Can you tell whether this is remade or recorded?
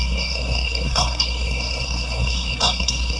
remade